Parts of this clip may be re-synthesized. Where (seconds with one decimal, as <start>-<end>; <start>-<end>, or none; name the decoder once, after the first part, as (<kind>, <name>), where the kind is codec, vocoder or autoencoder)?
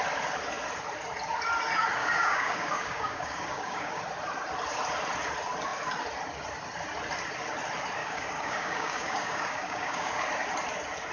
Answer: 2.0-4.0 (codec, DAC); 8.0-10.2